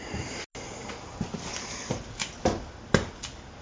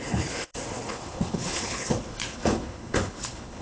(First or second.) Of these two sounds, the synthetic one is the second